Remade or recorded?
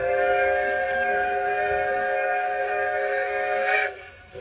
remade